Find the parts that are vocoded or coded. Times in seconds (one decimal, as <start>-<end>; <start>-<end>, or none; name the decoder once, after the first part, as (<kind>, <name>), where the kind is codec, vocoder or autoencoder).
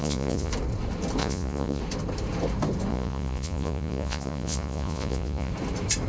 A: 0.0-0.5 (vocoder, Vocos); 1.2-1.8; 2.9-5.5